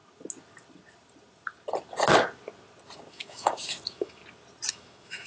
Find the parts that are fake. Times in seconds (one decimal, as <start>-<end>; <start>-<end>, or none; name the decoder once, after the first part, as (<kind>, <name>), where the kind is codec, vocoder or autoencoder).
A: 3.1-4.2 (autoencoder, DAC-VAE); 4.7-5.3